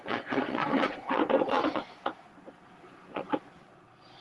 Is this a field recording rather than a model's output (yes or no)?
no